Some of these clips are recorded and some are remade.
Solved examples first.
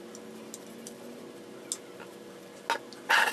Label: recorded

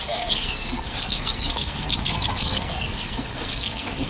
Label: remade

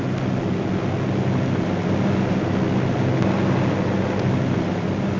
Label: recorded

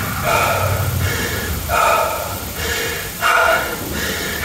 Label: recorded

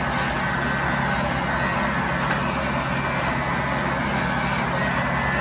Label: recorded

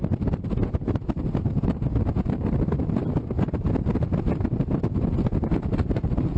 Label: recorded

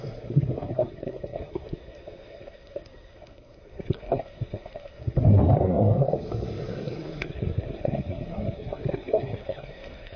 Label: remade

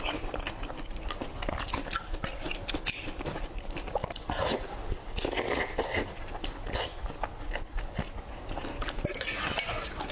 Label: recorded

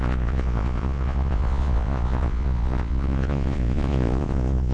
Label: remade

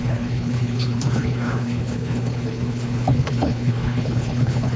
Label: remade